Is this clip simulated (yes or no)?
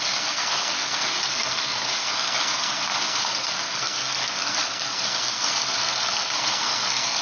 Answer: yes